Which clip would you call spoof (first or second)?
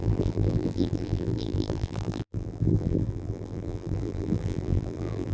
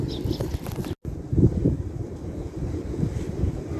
first